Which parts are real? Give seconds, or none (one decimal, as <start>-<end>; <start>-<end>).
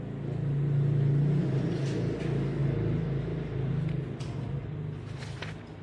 0.0-5.8